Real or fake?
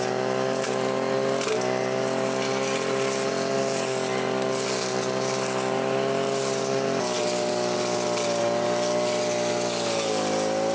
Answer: real